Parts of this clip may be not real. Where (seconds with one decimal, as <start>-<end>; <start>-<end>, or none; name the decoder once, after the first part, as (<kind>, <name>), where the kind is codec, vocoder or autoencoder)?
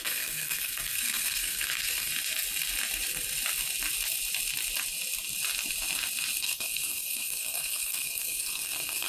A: 0.0-2.1 (codec, SNAC); 6.4-9.1